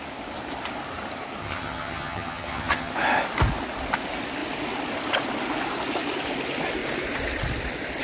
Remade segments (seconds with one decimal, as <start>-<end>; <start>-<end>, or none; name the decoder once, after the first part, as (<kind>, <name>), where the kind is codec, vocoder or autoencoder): 1.4-2.9 (vocoder, HiFi-GAN)